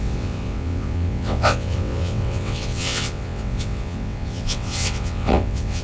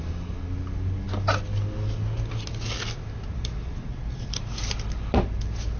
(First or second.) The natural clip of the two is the second